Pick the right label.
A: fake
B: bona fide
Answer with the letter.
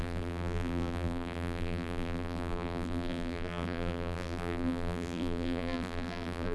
A